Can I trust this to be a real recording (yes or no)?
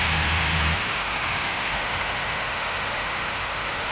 no